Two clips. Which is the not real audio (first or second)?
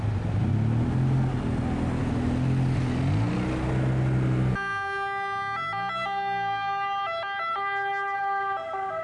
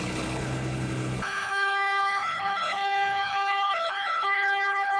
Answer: second